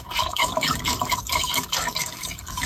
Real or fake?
fake